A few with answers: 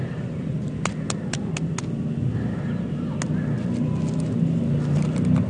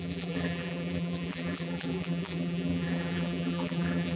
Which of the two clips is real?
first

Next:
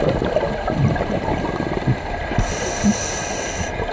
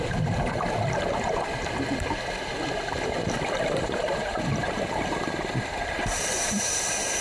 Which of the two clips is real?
first